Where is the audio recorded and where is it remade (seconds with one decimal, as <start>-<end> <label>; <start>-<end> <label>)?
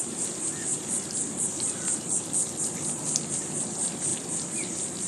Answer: 0.0-5.1 recorded